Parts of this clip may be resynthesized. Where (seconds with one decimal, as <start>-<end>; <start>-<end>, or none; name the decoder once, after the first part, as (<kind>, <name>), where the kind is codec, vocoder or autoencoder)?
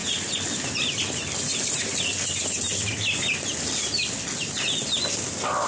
1.4-2.1 (vocoder, BigVGAN v2)